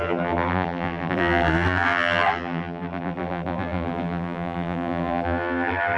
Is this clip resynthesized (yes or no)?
yes